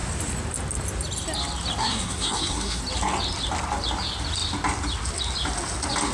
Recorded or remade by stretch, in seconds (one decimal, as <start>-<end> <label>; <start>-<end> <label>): 0.0-1.8 recorded; 1.8-2.8 remade; 2.8-6.1 recorded

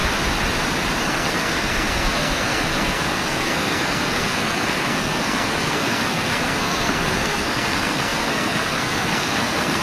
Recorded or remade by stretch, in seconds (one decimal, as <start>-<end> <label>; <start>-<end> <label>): 0.0-1.0 recorded; 1.0-9.8 remade